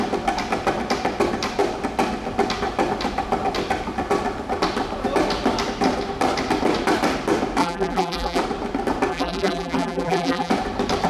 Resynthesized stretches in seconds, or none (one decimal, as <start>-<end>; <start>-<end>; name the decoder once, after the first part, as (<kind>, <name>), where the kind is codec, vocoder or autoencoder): 7.6-8.4 (vocoder, BigVGAN v2); 9.1-10.5